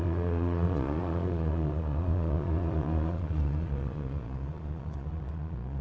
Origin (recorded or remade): remade